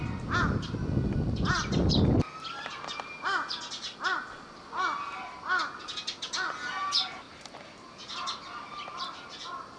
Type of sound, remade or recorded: recorded